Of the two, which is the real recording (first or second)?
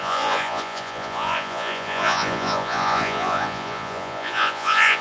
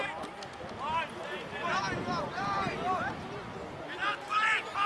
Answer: second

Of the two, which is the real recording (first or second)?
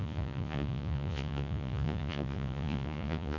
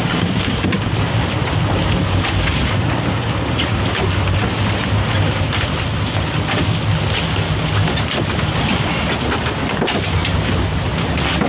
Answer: second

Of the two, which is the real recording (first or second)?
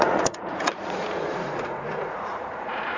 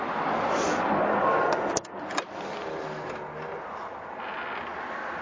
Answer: second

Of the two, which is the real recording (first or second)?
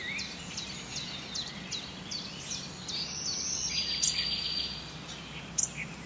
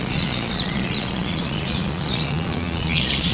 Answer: first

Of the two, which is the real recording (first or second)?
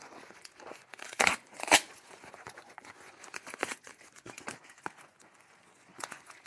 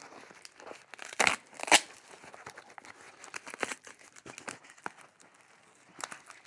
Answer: second